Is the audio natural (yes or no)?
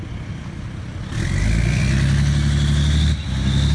yes